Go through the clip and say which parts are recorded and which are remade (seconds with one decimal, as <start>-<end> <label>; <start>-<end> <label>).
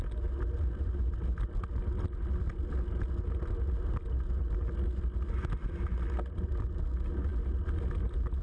0.0-8.4 recorded